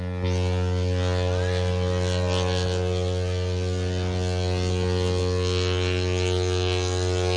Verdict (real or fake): real